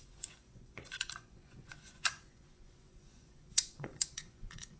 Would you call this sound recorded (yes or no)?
no